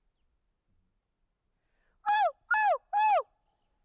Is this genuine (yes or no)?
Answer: yes